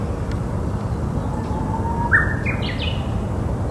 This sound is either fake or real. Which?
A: real